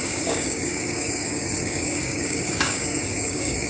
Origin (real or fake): fake